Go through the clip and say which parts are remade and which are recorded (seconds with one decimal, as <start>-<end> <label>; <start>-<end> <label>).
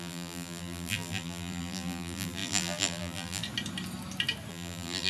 0.0-3.4 remade; 3.4-4.5 recorded; 4.5-5.1 remade